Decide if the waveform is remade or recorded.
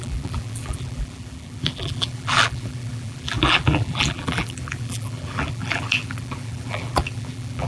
remade